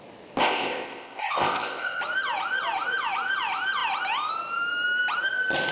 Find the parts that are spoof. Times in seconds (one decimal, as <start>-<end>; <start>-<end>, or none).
0.4-2.0